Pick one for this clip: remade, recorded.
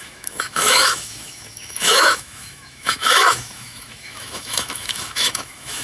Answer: remade